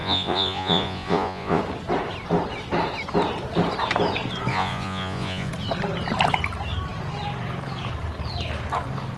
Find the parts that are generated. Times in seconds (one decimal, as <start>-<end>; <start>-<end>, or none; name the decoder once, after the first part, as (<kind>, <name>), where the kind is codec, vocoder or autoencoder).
0.0-1.6 (vocoder, Vocos); 4.5-5.5